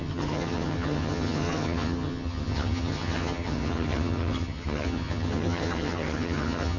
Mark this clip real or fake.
fake